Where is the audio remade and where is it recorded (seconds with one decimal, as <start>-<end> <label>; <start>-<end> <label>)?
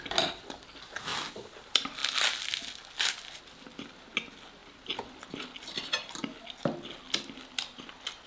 0.0-1.1 recorded; 1.1-1.6 remade; 1.6-4.6 recorded; 4.6-5.2 remade; 5.2-8.3 recorded